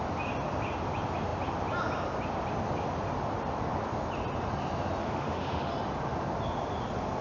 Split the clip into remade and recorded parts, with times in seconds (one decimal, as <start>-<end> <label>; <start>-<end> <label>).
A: 0.0-5.0 recorded; 5.0-5.7 remade; 5.7-7.2 recorded